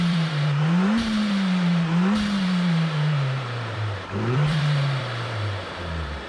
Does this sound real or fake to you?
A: fake